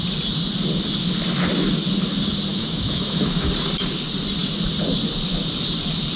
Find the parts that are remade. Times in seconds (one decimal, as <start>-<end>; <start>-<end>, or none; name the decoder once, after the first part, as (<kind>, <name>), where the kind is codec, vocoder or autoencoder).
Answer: 2.5-3.5 (autoencoder, DAC-VAE)